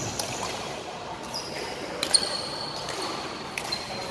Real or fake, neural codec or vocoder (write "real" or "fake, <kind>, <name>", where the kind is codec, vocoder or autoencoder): fake, vocoder, BigVGAN v2